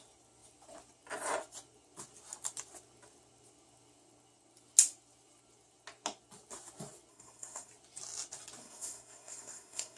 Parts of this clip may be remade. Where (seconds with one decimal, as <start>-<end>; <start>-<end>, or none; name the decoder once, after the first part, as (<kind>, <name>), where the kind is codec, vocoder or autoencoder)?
7.1-7.7 (codec, SNAC); 8.6-10.0